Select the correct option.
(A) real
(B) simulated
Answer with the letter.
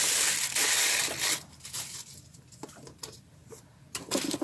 A